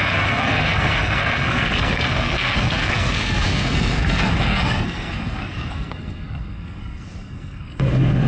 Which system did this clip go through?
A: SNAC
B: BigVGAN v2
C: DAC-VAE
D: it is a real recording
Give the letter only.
A